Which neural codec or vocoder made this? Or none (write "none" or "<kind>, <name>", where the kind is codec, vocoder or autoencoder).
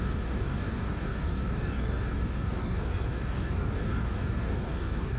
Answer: codec, DAC